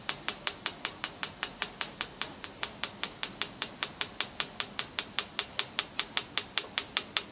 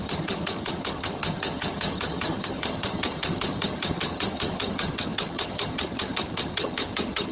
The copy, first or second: second